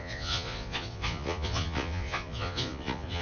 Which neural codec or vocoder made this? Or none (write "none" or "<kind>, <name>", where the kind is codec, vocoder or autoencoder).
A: vocoder, Vocos